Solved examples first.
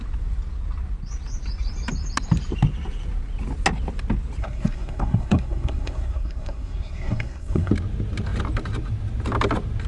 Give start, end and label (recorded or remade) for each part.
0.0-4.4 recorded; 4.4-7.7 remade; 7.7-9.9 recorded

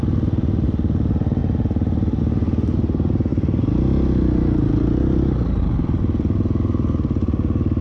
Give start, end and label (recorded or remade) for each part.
0.0-7.8 recorded

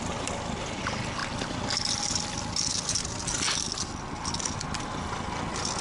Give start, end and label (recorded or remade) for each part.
0.0-5.8 recorded

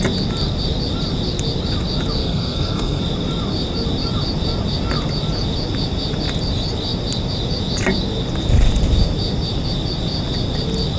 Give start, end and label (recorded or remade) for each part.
0.0-2.2 recorded; 2.2-3.0 remade; 3.0-11.0 recorded